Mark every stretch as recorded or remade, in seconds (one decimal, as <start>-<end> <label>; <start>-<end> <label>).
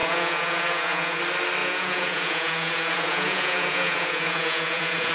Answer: 0.0-1.2 remade; 1.2-1.6 recorded; 1.6-5.1 remade